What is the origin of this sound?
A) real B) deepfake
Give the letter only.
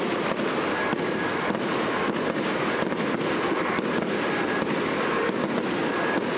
A